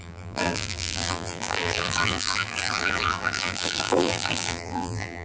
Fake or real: fake